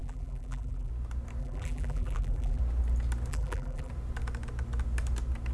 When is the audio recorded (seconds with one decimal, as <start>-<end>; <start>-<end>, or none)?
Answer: 0.9-1.4; 2.6-3.3; 3.9-5.5